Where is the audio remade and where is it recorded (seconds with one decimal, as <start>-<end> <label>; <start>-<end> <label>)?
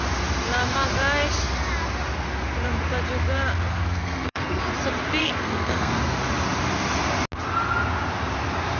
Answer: 0.0-3.7 recorded; 3.7-4.6 remade; 4.6-5.2 recorded; 5.2-5.9 remade; 5.9-8.8 recorded